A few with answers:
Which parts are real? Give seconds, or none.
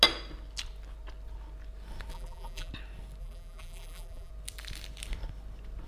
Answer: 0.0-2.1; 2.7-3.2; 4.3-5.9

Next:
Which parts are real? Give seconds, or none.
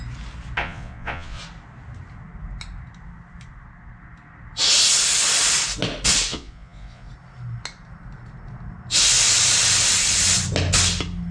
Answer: 0.0-0.6; 1.4-6.3; 7.1-11.3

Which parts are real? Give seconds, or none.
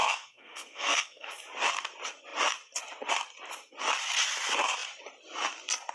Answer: 1.3-5.9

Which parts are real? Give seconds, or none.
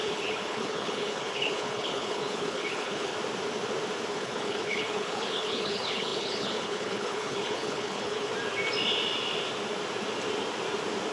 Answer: 3.1-4.1; 8.3-11.1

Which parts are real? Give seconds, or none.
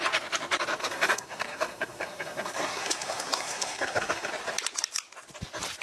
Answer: 0.0-0.8; 4.3-5.8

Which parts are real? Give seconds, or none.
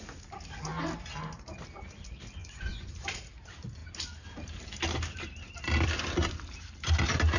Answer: 0.0-2.4; 2.9-7.4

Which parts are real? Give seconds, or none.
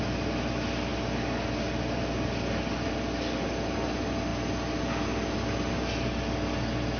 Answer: 0.0-7.0